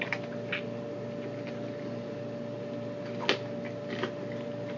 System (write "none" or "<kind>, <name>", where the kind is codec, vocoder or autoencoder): none